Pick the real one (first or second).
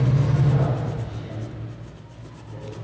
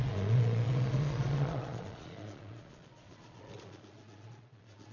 first